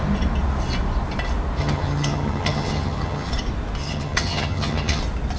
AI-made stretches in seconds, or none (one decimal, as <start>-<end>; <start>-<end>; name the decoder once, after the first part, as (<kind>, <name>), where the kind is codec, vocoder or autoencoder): 1.6-3.3 (vocoder, HiFi-GAN); 3.8-5.0